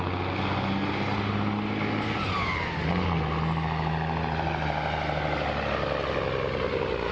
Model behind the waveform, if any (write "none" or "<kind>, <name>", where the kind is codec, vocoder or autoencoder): none